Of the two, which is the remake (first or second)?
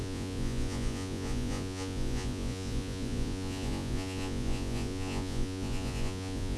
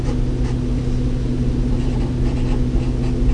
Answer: first